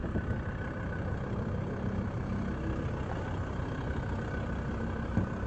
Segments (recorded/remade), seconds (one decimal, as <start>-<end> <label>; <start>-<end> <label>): 0.0-5.5 recorded